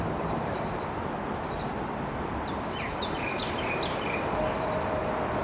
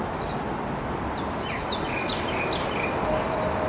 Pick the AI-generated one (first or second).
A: first